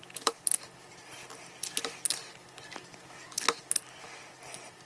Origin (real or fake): real